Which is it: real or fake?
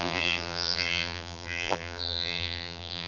fake